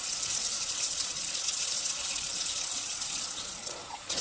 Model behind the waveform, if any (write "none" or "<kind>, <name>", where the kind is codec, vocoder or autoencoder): vocoder, Vocos